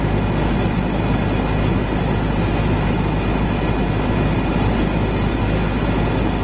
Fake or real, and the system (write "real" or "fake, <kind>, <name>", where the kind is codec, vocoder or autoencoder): real